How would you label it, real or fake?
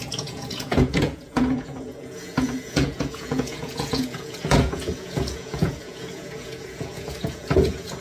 fake